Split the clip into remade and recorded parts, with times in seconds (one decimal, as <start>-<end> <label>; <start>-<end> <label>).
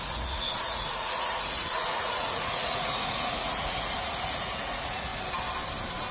0.0-5.1 remade; 5.1-6.1 recorded